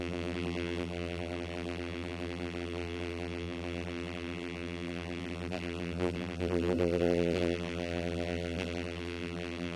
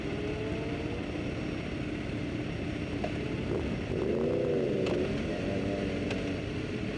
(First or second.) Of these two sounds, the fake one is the first